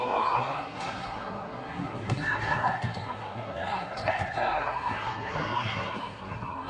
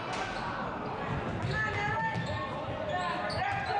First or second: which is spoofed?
first